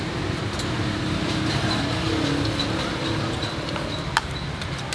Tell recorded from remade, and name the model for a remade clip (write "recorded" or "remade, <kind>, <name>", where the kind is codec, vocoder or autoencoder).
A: recorded